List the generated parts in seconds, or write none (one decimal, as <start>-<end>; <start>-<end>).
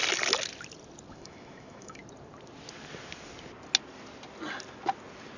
1.1-2.0